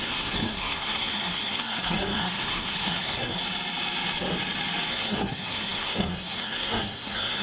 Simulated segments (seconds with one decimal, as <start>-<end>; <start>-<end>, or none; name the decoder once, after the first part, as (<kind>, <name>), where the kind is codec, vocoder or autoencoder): 0.0-3.4 (codec, SNAC); 4.9-7.4